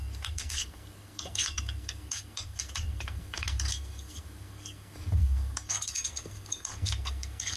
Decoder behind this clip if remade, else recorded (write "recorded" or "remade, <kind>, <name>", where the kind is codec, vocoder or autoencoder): remade, codec, SNAC